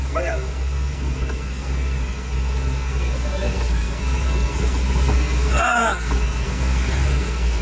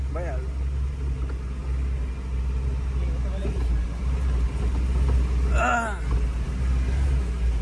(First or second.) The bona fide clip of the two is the second